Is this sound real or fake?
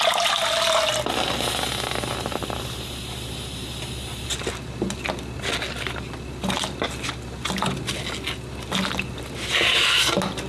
real